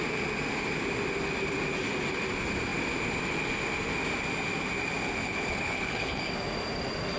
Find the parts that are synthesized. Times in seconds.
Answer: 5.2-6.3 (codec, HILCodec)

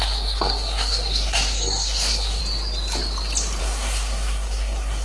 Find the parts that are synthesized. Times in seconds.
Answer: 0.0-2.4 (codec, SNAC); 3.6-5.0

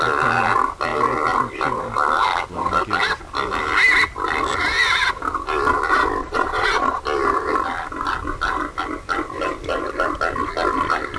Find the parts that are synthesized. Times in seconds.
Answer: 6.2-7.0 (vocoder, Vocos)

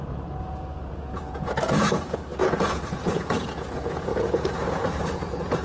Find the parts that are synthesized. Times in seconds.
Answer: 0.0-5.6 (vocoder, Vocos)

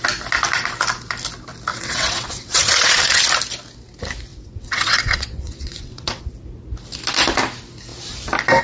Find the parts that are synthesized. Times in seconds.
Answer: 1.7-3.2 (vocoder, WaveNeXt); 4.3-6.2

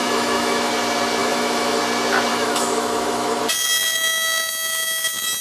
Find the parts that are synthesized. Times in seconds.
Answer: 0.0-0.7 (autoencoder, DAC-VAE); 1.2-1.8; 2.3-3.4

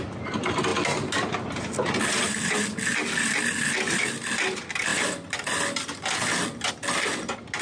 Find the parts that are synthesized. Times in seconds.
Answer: none